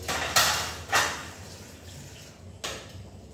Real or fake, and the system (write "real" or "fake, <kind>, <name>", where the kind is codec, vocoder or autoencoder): real